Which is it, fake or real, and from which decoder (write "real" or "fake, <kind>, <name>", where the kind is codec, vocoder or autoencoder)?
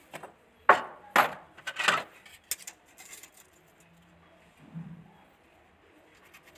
real